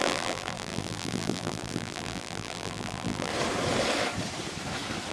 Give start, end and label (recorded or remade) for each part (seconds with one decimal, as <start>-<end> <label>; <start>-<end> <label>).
0.0-3.3 remade; 3.3-5.1 recorded